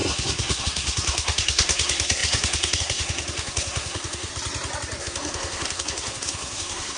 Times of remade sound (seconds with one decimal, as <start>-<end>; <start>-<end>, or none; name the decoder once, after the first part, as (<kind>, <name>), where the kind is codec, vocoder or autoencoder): 0.0-4.3 (codec, SNAC); 5.0-7.0